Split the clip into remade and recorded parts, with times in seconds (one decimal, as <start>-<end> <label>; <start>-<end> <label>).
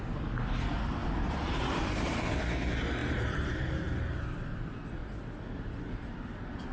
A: 0.0-1.0 recorded; 1.0-2.4 remade; 2.4-3.0 recorded; 3.0-3.6 remade; 3.6-5.0 recorded; 5.0-6.0 remade; 6.0-6.7 recorded